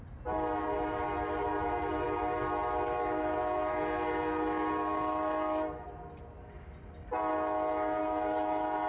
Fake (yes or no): no